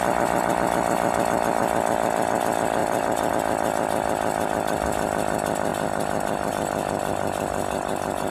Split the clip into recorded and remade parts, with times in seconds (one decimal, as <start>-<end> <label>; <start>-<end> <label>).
0.0-2.8 recorded; 2.8-3.3 remade; 3.3-8.3 recorded